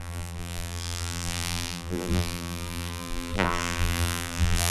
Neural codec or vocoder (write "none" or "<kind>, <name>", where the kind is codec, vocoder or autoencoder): vocoder, BigVGAN v2